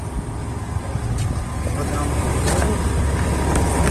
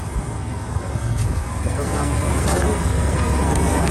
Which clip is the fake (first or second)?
second